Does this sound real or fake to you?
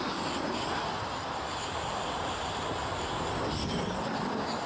real